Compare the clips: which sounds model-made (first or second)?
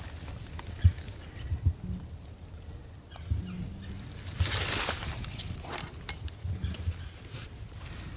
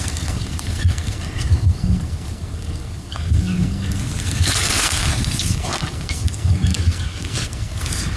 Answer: second